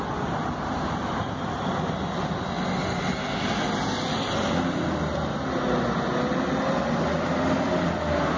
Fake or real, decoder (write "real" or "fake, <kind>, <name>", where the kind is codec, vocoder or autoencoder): real